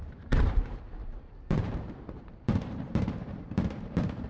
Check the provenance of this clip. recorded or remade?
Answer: remade